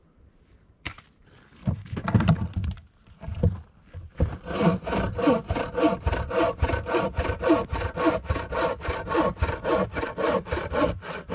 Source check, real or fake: real